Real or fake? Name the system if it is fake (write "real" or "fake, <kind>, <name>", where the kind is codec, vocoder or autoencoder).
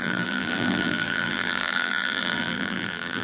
fake, vocoder, BigVGAN v2